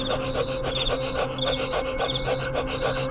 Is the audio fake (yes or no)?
no